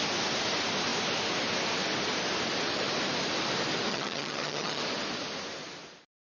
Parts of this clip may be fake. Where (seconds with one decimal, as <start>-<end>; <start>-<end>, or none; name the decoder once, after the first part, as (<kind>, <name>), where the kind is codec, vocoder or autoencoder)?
3.9-4.8 (vocoder, HiFi-GAN)